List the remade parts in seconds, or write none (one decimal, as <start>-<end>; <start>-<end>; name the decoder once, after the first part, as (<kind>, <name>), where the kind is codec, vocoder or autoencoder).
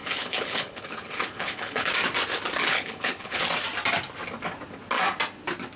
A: 0.0-1.9 (codec, HILCodec); 2.6-3.4